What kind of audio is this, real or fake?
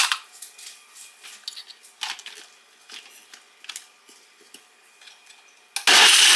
real